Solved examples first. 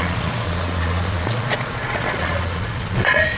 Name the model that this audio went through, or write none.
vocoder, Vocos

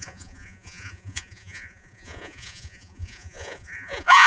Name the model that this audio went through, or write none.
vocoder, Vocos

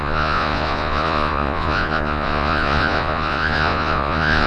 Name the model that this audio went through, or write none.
vocoder, Vocos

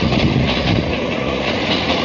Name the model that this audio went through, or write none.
vocoder, Vocos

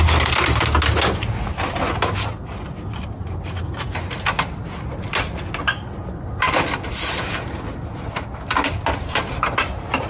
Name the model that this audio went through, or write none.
none